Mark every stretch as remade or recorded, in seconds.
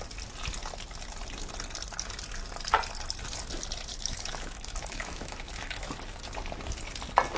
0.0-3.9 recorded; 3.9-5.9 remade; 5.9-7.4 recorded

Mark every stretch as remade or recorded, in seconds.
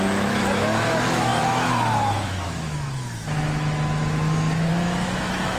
0.0-5.6 remade